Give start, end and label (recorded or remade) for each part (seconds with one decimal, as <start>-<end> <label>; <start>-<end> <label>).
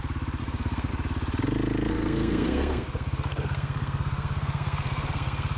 0.0-0.4 recorded; 0.4-0.9 remade; 0.9-1.9 recorded; 1.9-5.6 remade